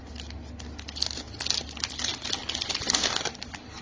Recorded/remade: recorded